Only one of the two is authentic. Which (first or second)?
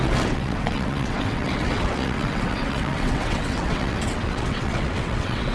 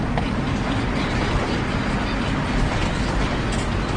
second